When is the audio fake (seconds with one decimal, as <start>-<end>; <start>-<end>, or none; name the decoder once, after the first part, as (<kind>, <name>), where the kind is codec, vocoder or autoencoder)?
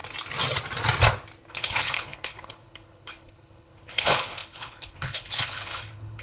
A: 1.5-6.2 (codec, HILCodec)